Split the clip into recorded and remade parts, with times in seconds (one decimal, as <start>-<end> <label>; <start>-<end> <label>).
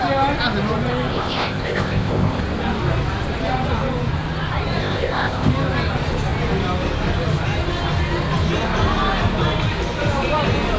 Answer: 0.0-1.1 recorded; 1.1-2.4 remade; 2.4-4.8 recorded; 4.8-5.5 remade; 5.5-10.8 recorded